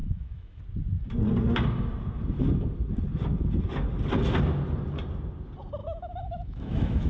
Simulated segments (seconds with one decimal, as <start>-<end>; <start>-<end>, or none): 0.0-0.6; 5.8-7.1